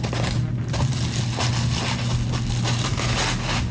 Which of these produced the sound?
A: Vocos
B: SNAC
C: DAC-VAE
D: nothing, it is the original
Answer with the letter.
D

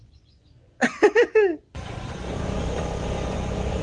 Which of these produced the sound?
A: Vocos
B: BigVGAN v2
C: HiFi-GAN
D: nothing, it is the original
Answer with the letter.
A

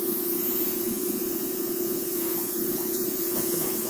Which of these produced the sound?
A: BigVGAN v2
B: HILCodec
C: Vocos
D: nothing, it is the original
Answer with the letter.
C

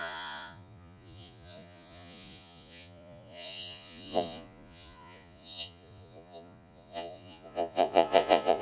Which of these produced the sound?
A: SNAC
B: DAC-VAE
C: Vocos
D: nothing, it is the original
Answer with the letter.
C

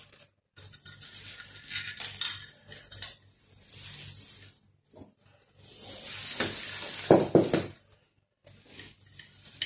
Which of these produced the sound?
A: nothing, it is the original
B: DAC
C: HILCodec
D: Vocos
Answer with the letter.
A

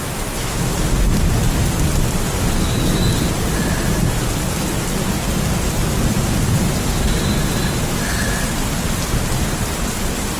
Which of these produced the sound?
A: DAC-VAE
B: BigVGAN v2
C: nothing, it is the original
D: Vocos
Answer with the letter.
C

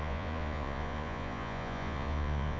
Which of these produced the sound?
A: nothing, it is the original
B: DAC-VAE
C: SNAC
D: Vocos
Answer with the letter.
D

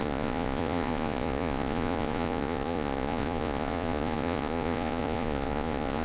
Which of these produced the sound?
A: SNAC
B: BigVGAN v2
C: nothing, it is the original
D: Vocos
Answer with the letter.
D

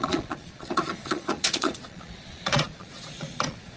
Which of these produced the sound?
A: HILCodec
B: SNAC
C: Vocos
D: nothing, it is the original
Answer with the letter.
C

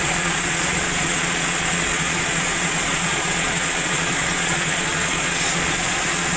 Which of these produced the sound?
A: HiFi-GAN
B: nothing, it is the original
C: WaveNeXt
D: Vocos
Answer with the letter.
D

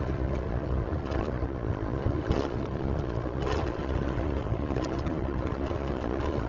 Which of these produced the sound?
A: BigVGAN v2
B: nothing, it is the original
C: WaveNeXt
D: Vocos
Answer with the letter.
D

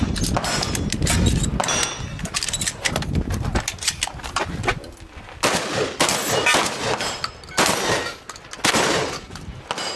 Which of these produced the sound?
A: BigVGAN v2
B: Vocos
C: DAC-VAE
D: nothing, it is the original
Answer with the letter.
D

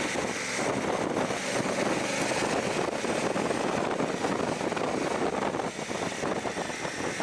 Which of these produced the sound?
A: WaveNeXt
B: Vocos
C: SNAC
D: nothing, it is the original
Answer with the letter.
D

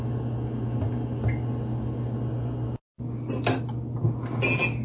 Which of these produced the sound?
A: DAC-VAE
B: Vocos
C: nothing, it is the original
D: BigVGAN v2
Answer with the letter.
C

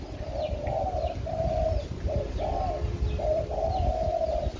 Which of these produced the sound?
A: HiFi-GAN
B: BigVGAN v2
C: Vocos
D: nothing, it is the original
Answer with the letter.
D